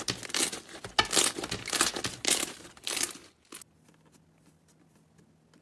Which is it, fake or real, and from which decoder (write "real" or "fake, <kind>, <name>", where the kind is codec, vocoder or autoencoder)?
real